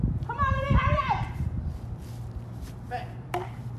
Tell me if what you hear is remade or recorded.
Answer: recorded